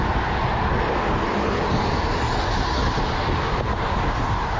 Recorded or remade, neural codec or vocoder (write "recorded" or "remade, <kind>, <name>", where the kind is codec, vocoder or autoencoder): recorded